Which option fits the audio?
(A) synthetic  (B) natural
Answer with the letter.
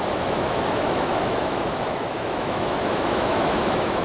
A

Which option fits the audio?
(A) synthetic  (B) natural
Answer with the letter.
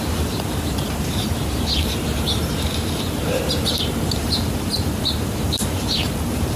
A